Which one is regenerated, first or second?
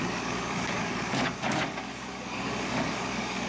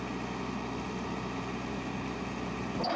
first